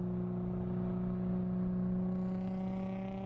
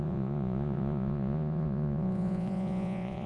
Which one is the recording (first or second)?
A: first